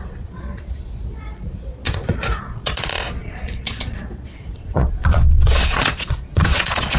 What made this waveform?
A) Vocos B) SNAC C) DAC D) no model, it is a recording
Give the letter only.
A